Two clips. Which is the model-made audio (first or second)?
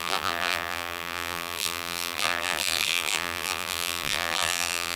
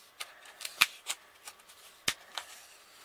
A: first